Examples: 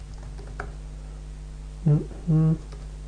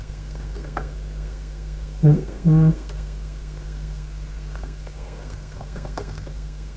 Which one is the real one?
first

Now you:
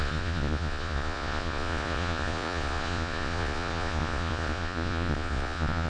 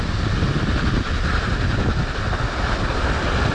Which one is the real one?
second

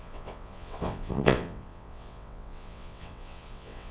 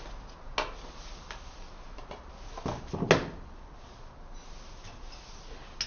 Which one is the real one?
second